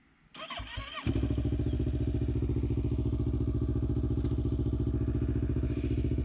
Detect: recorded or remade recorded